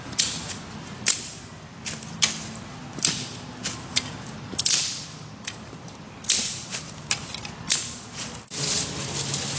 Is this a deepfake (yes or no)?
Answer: no